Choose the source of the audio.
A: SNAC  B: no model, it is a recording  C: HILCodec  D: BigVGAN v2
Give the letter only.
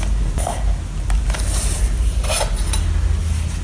B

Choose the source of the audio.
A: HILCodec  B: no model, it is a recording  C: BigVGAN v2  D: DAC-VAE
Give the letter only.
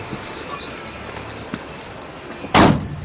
B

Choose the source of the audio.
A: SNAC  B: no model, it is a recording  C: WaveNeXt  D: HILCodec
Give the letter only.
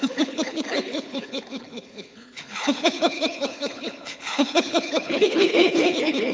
D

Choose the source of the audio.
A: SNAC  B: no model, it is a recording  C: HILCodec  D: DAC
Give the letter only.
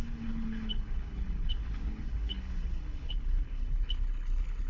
C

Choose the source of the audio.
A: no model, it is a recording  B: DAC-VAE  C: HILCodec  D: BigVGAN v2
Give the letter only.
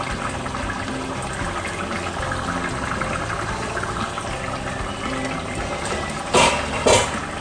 A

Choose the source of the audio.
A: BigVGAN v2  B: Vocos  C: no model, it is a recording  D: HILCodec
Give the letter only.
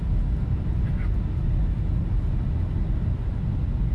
C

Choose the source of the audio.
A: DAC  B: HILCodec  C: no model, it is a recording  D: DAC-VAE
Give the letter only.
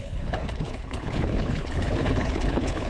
B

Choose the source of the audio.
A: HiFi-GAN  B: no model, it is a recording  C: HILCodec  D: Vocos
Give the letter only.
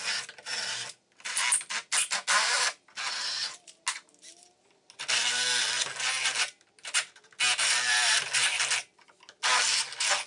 B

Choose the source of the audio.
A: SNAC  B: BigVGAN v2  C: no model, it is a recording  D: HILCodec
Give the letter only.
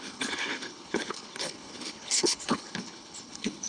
D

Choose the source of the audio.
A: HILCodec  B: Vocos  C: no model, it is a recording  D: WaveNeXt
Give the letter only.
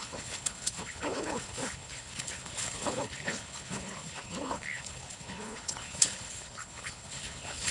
A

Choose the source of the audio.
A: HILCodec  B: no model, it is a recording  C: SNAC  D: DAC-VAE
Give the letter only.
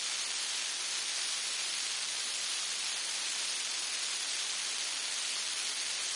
B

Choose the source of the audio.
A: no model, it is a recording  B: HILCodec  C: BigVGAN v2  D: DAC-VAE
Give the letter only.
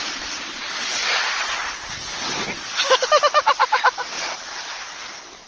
A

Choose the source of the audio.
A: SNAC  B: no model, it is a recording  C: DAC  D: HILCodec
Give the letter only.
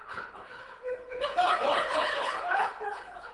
D